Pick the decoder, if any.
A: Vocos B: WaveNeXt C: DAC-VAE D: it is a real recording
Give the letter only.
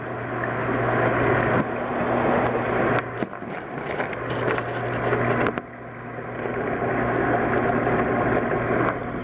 D